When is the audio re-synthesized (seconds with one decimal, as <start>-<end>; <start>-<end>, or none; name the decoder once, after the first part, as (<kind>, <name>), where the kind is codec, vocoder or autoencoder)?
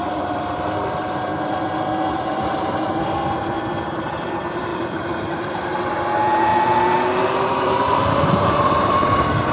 0.0-1.3 (vocoder, BigVGAN v2); 2.1-6.5; 7.2-9.5